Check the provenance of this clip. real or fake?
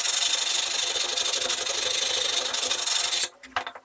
real